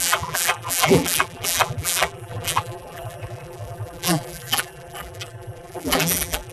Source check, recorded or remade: remade